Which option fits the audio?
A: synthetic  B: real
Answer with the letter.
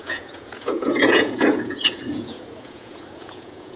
A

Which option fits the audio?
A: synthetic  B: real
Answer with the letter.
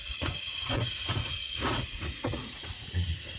A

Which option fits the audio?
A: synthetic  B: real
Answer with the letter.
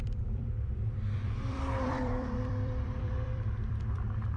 A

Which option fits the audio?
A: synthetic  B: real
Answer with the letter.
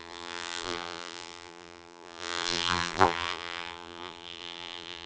A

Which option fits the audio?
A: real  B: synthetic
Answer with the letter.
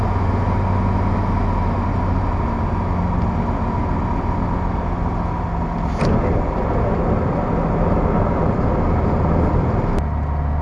A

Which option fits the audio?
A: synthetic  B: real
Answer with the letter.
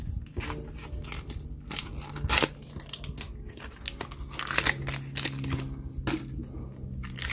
B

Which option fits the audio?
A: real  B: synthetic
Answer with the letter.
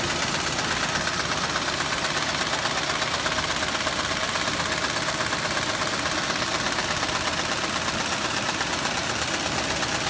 A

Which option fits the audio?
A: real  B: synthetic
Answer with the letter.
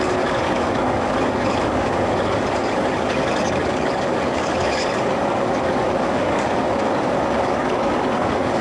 B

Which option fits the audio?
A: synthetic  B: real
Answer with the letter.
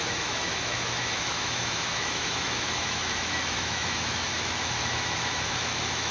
A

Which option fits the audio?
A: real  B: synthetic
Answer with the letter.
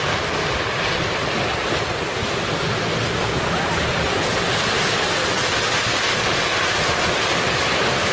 A